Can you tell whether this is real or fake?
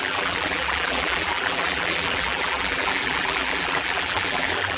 fake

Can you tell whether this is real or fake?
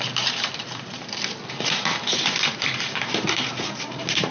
fake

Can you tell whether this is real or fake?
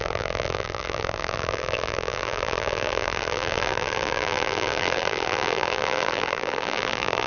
fake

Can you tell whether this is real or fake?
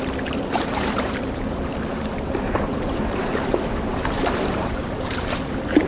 fake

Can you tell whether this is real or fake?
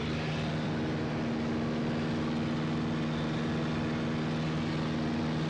real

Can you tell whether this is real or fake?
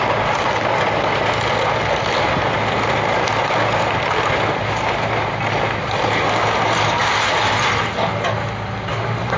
real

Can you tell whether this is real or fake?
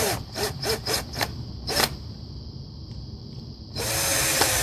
fake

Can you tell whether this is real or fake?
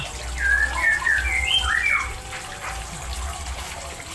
real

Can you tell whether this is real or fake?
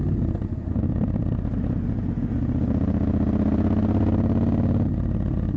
real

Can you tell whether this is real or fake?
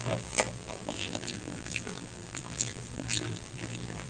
fake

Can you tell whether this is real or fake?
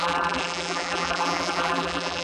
fake